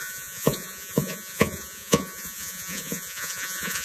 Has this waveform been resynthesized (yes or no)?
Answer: yes